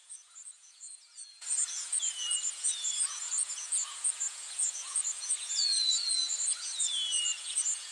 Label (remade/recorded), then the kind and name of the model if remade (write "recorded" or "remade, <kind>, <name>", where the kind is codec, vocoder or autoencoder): remade, vocoder, Vocos